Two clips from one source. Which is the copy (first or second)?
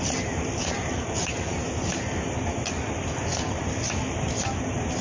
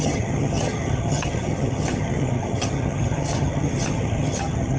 second